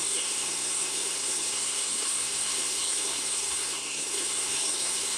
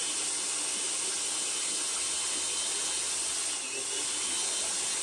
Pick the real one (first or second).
second